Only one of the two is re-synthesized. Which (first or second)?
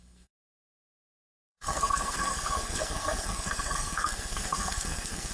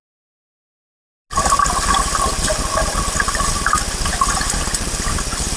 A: first